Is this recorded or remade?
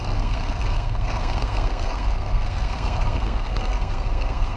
remade